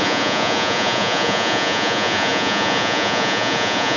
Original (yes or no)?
no